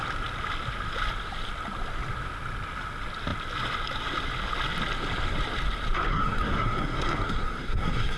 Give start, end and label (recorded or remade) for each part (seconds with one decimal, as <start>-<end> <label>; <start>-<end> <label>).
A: 0.0-6.1 recorded; 6.1-8.2 remade